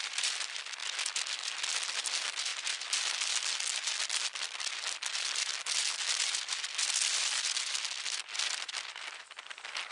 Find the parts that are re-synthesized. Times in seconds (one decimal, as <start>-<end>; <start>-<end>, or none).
none